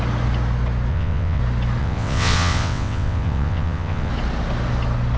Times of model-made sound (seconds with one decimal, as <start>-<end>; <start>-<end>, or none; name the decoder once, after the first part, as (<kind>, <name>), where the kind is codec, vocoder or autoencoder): 0.9-1.4 (vocoder, WaveNeXt); 1.8-4.1